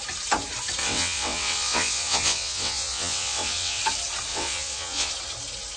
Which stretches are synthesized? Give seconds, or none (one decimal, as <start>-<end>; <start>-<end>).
0.8-3.8; 4.3-5.1